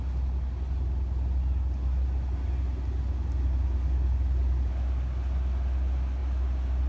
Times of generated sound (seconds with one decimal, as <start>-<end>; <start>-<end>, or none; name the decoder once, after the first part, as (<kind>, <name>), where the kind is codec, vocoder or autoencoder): none